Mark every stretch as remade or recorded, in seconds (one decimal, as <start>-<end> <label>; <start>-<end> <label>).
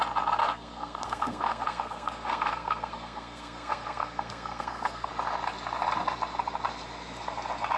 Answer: 0.0-0.4 recorded; 0.4-5.1 remade; 5.1-7.8 recorded